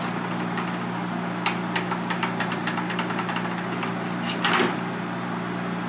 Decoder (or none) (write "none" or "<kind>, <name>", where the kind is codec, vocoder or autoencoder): none